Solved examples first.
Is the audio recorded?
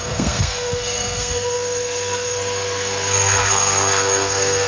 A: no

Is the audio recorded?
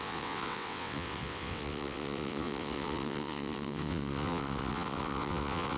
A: no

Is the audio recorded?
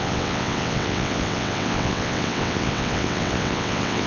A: no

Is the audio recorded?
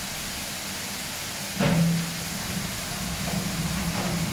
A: yes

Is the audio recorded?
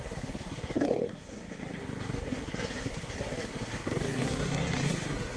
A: no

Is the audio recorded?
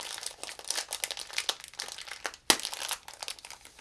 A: yes